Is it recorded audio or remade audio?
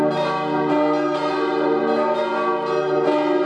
recorded